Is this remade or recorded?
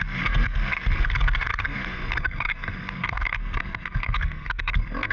remade